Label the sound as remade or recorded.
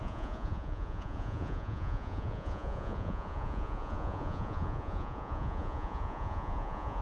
remade